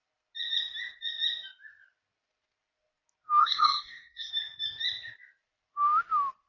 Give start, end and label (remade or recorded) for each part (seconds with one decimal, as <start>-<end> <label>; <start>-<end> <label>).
0.0-3.4 recorded; 3.4-4.3 remade; 4.3-6.5 recorded